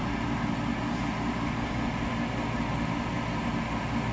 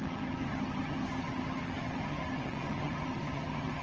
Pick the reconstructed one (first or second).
second